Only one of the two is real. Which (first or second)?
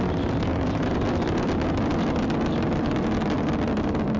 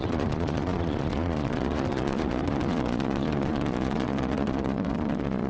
first